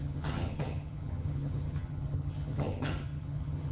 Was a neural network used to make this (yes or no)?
yes